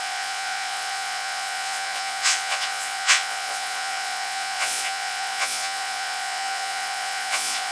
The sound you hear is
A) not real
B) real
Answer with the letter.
A